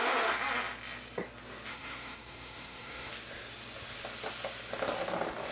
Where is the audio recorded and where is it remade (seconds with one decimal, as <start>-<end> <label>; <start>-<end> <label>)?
0.0-1.7 recorded; 1.7-3.1 remade; 3.1-5.5 recorded